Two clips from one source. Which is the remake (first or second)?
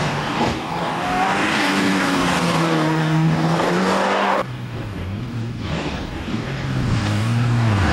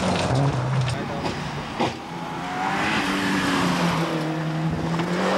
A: first